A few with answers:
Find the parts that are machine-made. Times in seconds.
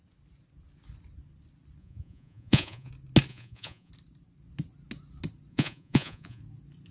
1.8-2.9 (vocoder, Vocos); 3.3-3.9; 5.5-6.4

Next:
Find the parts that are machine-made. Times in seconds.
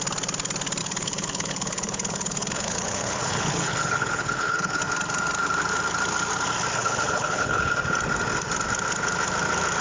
0.8-4.8 (codec, HILCodec); 6.8-7.7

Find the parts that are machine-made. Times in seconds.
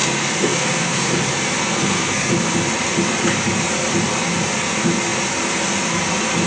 0.0-1.1 (codec, SNAC); 1.6-2.3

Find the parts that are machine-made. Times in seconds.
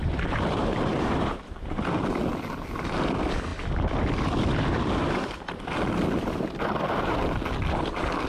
0.6-1.8 (vocoder, BigVGAN v2)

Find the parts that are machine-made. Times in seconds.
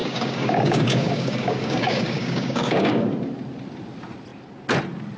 0.0-3.1 (codec, DAC)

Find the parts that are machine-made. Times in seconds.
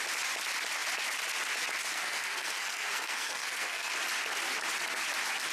1.9-4.0 (codec, SNAC)